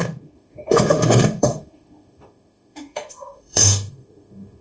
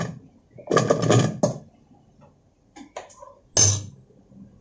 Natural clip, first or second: second